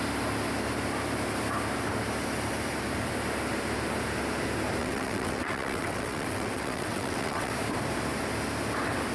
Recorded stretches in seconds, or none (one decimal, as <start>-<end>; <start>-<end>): 0.0-4.8; 7.5-9.1